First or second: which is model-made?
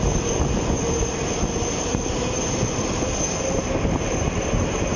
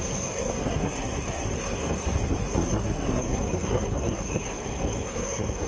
second